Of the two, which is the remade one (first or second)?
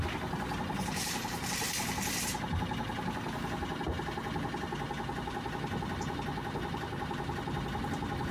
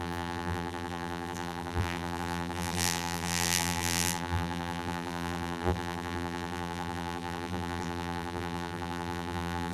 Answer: second